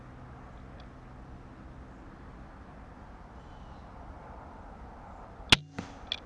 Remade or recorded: recorded